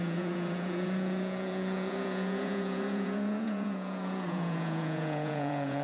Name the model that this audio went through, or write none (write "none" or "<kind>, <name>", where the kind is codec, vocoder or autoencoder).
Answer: vocoder, Vocos